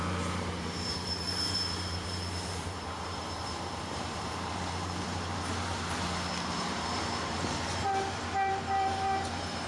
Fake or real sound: fake